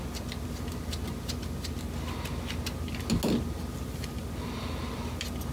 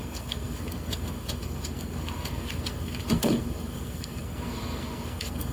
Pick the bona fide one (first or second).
first